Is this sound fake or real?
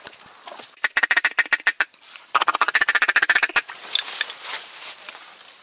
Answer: real